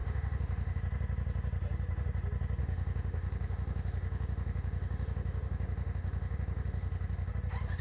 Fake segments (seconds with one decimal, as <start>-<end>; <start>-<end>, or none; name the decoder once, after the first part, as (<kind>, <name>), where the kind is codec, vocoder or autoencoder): 0.0-0.8 (autoencoder, DAC-VAE); 2.6-7.3